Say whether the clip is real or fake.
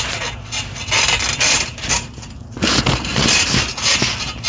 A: real